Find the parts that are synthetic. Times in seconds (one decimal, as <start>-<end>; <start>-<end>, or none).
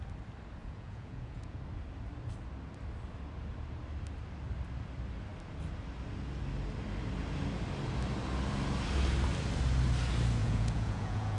0.6-1.6; 10.4-11.4